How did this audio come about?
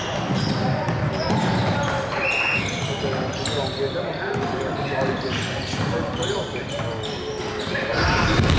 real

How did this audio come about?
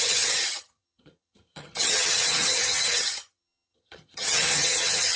fake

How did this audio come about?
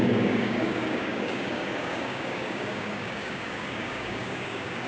fake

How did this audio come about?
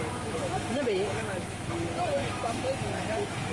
fake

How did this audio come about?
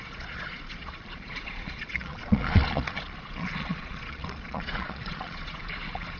fake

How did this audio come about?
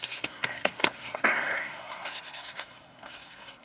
fake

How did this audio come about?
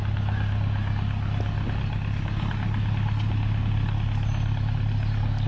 real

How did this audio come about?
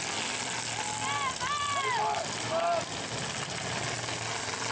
real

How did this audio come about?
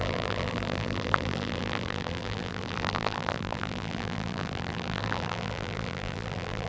fake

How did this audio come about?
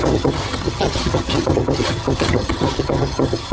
fake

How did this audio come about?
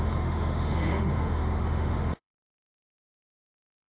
fake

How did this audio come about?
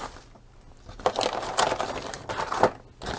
real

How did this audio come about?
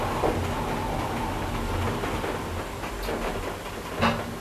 real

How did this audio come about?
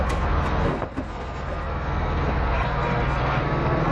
fake